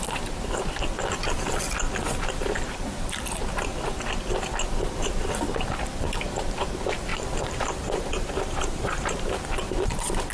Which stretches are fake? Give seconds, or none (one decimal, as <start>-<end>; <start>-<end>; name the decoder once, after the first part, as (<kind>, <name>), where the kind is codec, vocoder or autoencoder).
7.1-9.7 (vocoder, BigVGAN v2)